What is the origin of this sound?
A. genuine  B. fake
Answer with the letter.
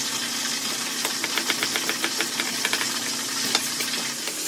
A